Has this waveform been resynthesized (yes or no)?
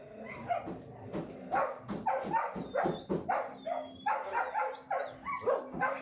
yes